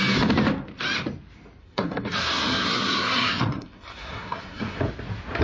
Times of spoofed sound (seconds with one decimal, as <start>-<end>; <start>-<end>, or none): 1.6-4.8

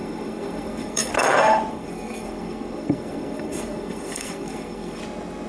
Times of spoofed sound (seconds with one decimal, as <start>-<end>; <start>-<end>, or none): 0.0-1.1; 1.7-5.0

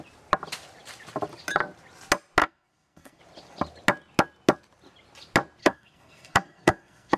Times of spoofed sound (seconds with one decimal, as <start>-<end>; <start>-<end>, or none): 2.4-3.2; 5.6-7.2

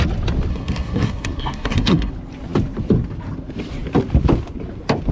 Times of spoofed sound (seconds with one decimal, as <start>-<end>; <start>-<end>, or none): 0.5-2.1

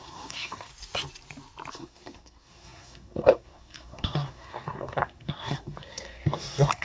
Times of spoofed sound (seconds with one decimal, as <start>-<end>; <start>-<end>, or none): 0.0-0.7; 1.7-6.8

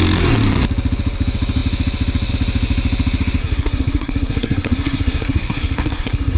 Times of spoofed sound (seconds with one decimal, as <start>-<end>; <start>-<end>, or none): 3.4-6.4

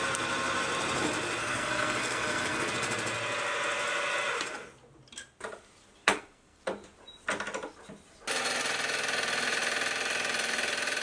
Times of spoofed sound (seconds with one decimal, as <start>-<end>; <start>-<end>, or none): 1.4-2.7; 6.0-6.6